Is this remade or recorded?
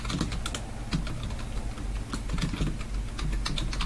recorded